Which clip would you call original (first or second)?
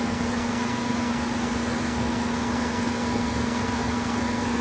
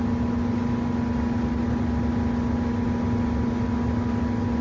second